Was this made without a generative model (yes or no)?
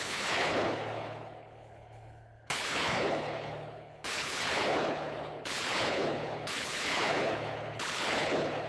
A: no